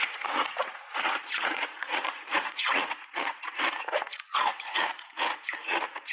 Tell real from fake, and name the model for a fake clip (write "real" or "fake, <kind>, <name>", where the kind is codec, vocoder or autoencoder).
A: fake, vocoder, Vocos